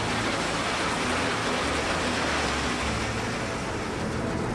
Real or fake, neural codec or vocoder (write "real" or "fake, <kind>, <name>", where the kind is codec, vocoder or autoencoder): real